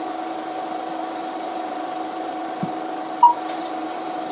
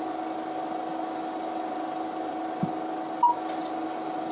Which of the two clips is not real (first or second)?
first